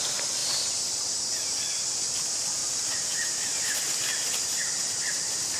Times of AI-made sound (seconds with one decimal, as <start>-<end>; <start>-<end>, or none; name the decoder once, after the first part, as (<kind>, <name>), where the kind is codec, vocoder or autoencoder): 0.0-0.4 (vocoder, BigVGAN v2); 1.8-2.6; 4.6-5.6